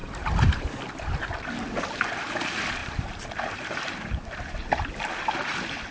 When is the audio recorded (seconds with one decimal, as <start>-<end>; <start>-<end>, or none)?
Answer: 0.8-2.8; 4.7-5.9